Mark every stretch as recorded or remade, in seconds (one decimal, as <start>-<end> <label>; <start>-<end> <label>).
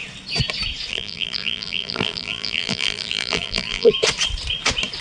0.0-0.9 recorded; 0.9-3.9 remade; 3.9-5.0 recorded